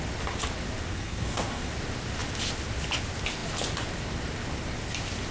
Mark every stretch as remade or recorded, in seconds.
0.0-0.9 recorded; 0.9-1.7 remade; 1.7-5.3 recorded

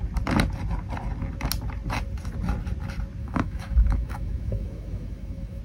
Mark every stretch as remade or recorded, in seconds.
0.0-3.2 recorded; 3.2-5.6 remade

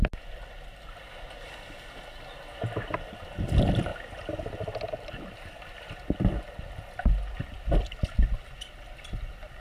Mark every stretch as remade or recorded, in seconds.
0.0-9.6 recorded

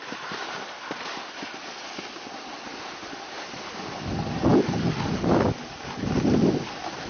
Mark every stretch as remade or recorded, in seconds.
0.0-7.1 recorded

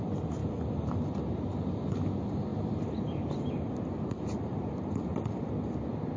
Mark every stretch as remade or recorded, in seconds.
0.0-2.5 recorded; 2.5-5.4 remade; 5.4-6.2 recorded

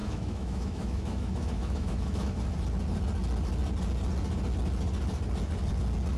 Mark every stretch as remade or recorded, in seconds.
0.0-2.4 remade; 2.4-6.2 recorded

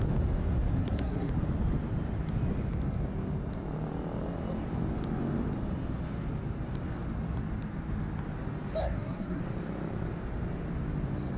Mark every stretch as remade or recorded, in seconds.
0.0-0.8 recorded; 0.8-1.3 remade; 1.3-8.8 recorded; 8.8-9.4 remade; 9.4-11.4 recorded

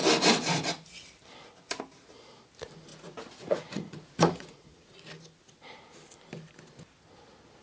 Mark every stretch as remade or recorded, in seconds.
0.0-2.9 recorded; 2.9-4.9 remade; 4.9-7.6 recorded